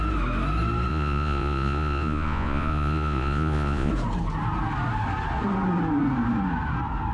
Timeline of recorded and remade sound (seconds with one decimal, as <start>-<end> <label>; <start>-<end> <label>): 0.0-0.9 recorded; 0.9-3.9 remade; 3.9-7.1 recorded